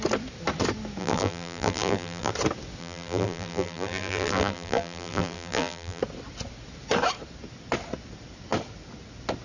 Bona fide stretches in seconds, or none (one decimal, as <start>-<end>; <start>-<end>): 0.0-1.0; 2.3-2.8; 6.0-9.4